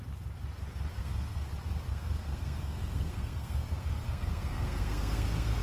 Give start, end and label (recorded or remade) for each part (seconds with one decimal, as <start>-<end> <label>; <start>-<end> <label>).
0.0-1.0 recorded; 1.0-1.5 remade; 1.5-1.9 recorded; 1.9-5.6 remade